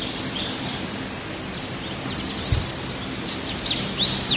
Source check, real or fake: real